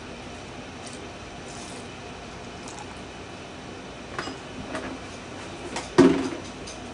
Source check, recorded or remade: recorded